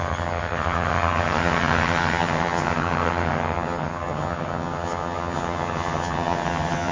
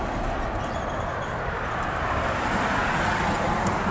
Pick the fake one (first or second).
first